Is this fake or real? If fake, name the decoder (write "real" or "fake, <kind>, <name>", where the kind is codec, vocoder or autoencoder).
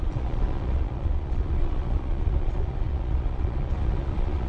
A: fake, vocoder, Vocos